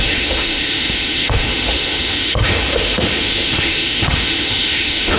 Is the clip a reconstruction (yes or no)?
yes